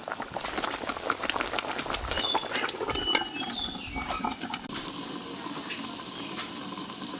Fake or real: real